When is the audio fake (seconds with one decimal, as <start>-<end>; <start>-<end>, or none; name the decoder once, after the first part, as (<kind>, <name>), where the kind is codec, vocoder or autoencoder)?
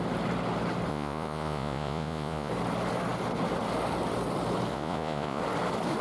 0.9-2.5 (vocoder, Vocos); 4.7-5.4